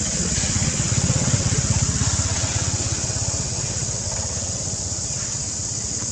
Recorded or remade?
remade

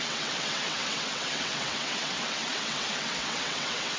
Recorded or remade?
remade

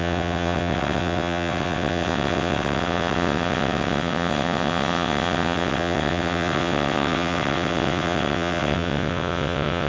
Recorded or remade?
remade